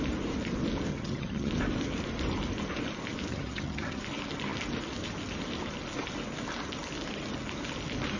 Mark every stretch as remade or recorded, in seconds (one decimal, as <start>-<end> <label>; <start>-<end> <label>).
0.0-0.9 recorded; 0.9-1.5 remade; 1.5-3.3 recorded; 3.3-4.0 remade; 4.0-8.2 recorded